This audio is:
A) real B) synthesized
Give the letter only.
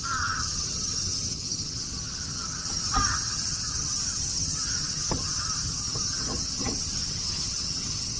B